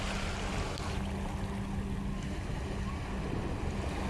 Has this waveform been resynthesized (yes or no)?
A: no